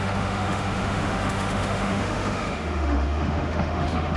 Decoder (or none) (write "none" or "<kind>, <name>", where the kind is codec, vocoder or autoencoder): autoencoder, DAC-VAE